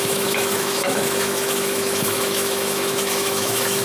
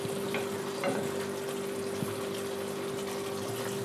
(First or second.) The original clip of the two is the second